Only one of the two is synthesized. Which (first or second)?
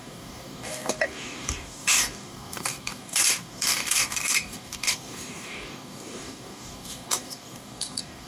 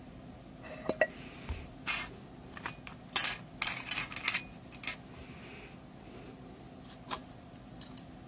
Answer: first